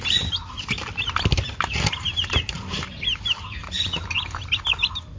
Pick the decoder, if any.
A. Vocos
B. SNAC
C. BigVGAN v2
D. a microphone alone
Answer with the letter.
D